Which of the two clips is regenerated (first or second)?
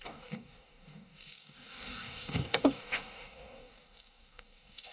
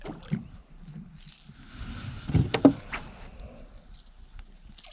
first